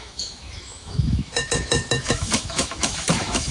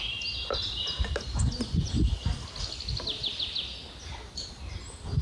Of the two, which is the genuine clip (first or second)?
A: second